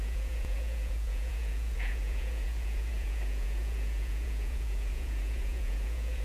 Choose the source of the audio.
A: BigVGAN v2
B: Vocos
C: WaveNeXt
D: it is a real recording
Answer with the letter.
B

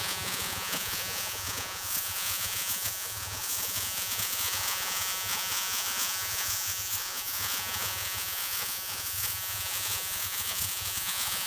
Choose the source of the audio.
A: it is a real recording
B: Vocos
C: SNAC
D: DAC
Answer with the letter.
B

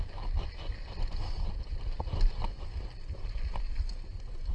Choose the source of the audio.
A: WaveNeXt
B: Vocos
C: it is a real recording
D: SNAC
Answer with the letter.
C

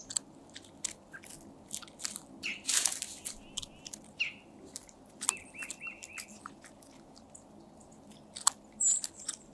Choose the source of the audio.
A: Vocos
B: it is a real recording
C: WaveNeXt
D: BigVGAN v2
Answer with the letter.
B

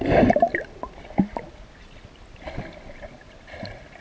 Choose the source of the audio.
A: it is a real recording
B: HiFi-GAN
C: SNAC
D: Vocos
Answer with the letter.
A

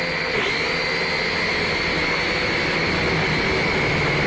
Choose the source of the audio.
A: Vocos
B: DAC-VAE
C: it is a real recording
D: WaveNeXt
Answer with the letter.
C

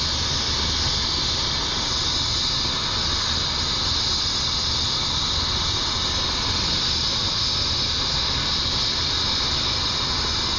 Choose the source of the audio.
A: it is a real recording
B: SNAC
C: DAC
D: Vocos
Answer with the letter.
A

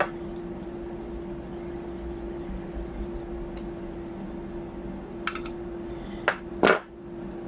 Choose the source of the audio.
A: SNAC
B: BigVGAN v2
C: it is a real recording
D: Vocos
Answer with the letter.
C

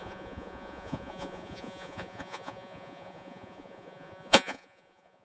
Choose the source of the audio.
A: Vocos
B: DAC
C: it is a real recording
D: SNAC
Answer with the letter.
A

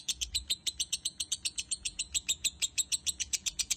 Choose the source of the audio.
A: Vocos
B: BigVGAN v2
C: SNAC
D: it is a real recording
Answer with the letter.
A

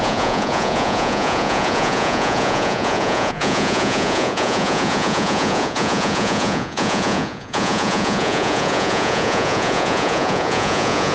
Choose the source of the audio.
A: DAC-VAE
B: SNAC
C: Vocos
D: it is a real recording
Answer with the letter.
C